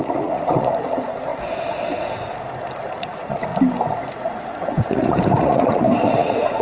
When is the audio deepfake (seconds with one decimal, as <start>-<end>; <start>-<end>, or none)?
0.0-1.3; 2.9-3.5; 4.1-6.6